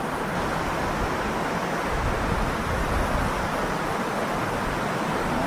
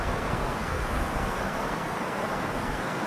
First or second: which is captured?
first